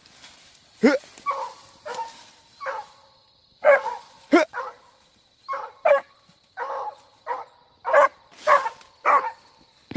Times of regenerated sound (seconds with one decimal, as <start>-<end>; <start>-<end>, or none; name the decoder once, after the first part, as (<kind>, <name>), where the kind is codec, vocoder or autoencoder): 3.5-4.6 (vocoder, Vocos)